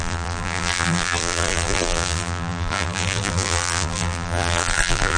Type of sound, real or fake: fake